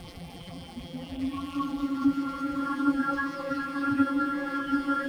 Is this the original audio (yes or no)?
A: no